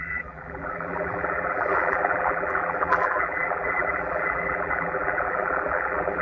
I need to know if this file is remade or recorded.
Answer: remade